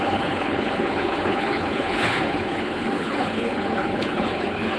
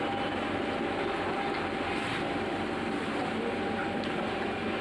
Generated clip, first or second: first